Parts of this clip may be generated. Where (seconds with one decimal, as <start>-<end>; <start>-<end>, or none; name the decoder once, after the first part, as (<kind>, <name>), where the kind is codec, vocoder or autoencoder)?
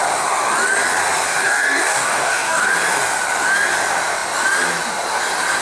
1.4-2.7 (codec, DAC)